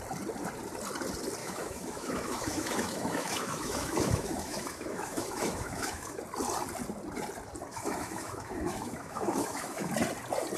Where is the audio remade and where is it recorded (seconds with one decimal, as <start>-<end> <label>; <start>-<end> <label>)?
0.0-1.4 recorded; 1.4-6.2 remade; 6.2-7.7 recorded; 7.7-9.9 remade; 9.9-10.6 recorded